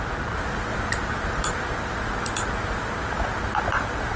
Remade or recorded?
recorded